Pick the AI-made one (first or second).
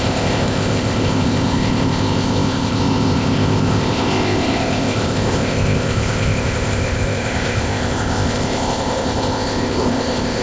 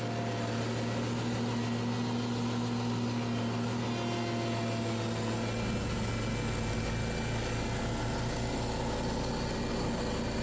first